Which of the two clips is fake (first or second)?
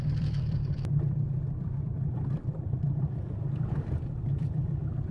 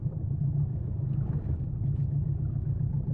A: first